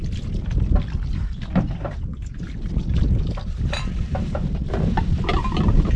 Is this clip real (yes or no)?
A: yes